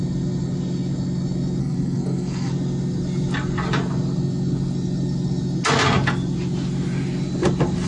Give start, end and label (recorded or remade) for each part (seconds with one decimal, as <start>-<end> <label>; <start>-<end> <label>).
0.0-1.6 recorded; 1.6-2.5 remade; 2.5-7.9 recorded